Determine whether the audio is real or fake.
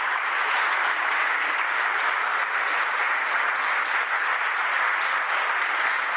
real